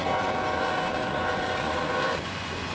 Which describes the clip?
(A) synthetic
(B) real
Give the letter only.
A